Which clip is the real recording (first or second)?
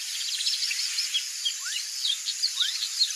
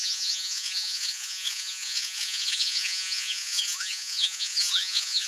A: first